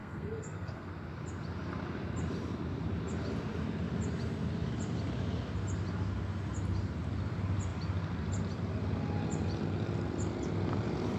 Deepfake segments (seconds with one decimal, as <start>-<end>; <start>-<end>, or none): 0.0-0.9